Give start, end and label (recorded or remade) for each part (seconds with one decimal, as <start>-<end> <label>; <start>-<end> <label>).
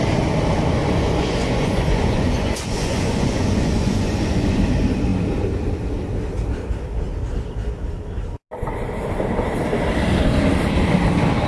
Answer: 0.0-0.8 recorded; 0.8-4.6 remade; 4.6-11.5 recorded